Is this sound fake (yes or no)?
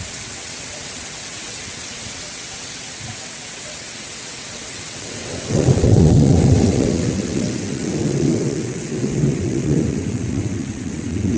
yes